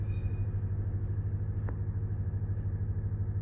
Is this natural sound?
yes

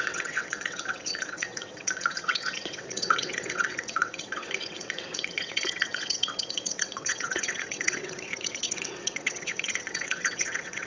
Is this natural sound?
no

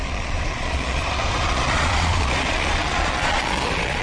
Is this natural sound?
no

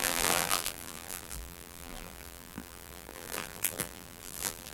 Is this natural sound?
no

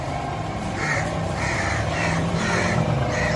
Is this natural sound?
no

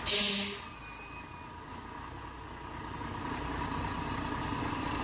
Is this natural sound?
yes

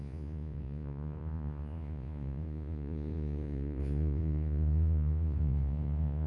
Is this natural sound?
no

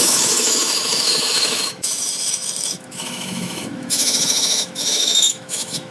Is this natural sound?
no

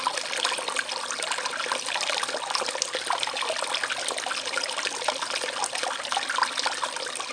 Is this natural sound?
yes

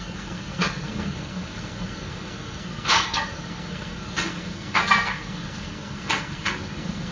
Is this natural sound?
no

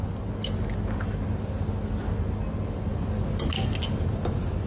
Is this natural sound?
yes